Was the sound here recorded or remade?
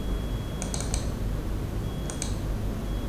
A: recorded